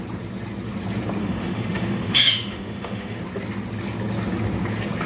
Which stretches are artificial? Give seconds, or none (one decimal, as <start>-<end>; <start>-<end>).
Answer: 1.2-3.2